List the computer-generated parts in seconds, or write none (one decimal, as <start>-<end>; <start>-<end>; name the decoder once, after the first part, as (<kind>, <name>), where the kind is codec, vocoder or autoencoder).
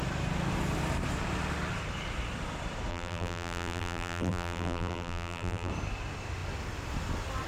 2.9-5.7 (vocoder, BigVGAN v2)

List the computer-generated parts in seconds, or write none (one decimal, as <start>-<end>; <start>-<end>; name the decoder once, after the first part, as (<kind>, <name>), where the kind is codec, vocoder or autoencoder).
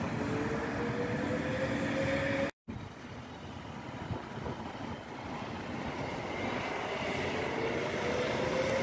none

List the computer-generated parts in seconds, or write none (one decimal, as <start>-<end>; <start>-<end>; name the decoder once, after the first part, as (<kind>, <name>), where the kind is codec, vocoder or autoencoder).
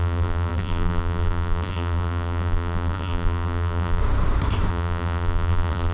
0.0-4.0 (vocoder, BigVGAN v2); 4.7-5.9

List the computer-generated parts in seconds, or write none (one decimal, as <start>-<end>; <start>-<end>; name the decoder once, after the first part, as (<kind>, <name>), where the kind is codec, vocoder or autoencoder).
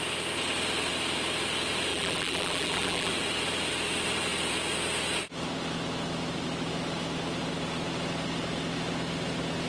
1.9-3.1 (vocoder, BigVGAN v2)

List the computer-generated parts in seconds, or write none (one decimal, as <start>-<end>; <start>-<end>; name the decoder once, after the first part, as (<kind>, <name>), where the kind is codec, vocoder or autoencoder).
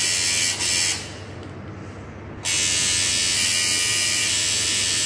3.9-5.1 (vocoder, BigVGAN v2)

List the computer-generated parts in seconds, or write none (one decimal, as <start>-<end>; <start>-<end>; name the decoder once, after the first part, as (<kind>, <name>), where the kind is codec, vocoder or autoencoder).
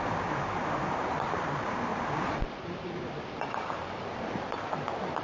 0.0-5.2 (vocoder, BigVGAN v2)